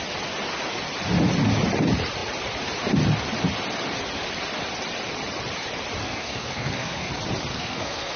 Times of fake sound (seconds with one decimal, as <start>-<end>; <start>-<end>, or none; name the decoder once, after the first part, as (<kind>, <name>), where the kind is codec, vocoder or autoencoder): 6.0-7.1 (codec, SNAC); 7.5-8.2